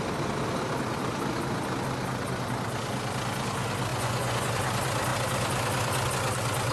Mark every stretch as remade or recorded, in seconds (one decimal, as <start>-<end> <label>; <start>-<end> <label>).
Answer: 0.0-3.9 recorded; 3.9-4.5 remade; 4.5-6.7 recorded